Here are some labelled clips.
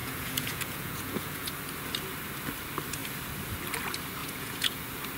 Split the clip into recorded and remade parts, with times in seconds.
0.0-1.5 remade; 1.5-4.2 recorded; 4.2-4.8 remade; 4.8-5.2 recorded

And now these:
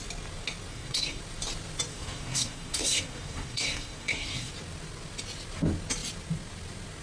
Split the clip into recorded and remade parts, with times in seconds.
0.0-0.7 recorded; 0.7-1.2 remade; 1.2-1.9 recorded; 1.9-4.5 remade; 4.5-7.0 recorded

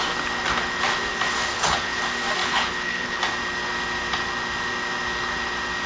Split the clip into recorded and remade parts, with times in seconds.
0.0-1.5 recorded; 1.5-2.0 remade; 2.0-2.4 recorded; 2.4-3.2 remade; 3.2-5.9 recorded

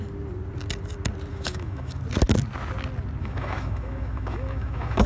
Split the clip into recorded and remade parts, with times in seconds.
0.0-1.3 recorded; 1.3-2.0 remade; 2.0-3.2 recorded; 3.2-5.1 remade

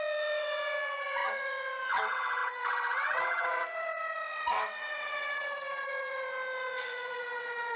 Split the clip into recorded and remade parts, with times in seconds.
0.0-7.8 remade

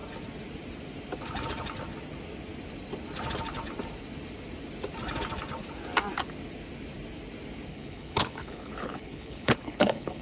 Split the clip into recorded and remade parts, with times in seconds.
0.0-7.7 recorded; 7.7-10.2 remade